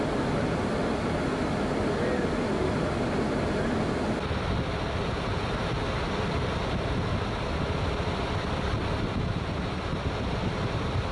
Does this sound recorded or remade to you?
recorded